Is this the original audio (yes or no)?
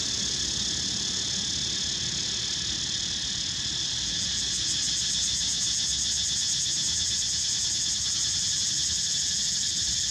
yes